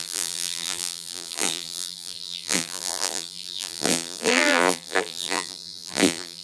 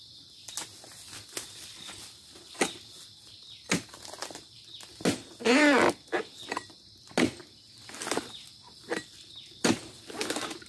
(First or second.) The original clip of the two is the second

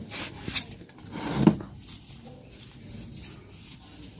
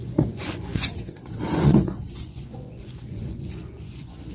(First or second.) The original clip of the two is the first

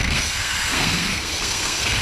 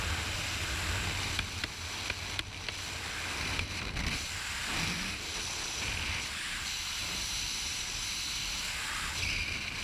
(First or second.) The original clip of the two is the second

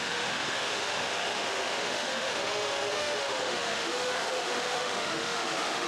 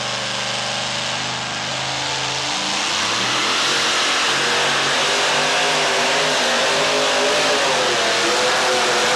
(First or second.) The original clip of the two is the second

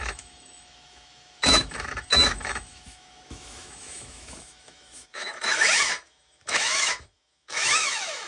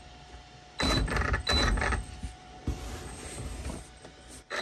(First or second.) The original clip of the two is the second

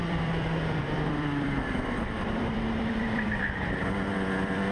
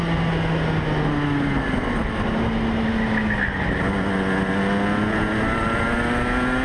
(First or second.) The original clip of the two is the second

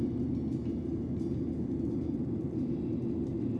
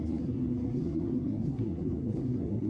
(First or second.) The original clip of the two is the first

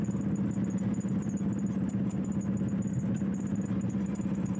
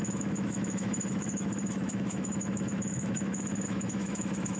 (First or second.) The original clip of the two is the first